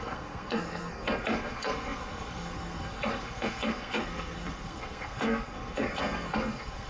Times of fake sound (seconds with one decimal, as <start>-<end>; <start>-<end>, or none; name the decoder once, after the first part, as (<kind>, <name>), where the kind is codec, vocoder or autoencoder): 0.0-6.9 (codec, SNAC)